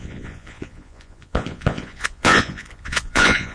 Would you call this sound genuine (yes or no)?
no